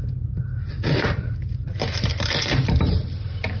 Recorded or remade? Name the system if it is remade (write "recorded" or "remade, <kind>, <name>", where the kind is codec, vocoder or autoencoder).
remade, vocoder, BigVGAN v2